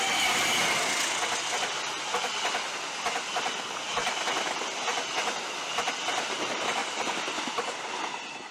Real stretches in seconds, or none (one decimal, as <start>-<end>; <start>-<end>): 0.0-8.5